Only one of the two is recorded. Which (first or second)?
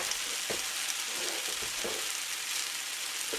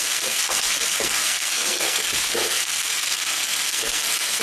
first